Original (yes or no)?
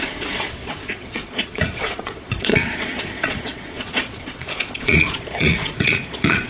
no